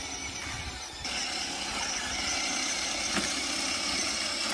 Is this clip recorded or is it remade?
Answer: recorded